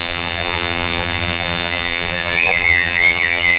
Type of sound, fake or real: fake